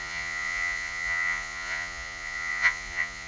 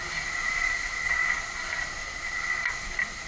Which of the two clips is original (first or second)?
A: second